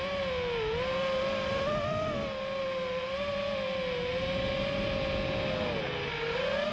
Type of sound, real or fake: real